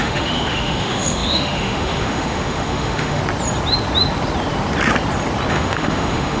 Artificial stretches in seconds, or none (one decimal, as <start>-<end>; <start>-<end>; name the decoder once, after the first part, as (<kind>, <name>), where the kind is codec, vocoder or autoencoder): 0.0-3.2 (autoencoder, DAC-VAE); 5.5-6.4